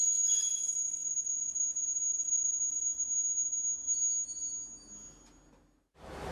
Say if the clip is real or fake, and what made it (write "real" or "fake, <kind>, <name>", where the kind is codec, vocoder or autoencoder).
real